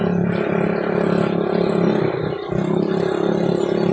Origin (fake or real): real